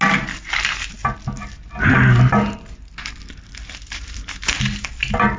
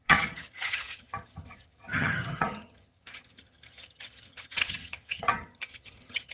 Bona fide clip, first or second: first